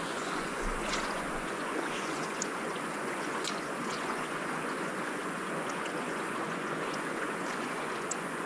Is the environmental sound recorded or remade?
remade